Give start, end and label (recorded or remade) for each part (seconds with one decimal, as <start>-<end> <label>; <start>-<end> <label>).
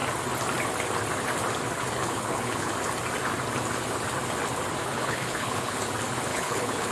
0.0-2.0 recorded; 2.0-2.7 remade; 2.7-4.8 recorded; 4.8-5.8 remade; 5.8-6.3 recorded; 6.3-6.9 remade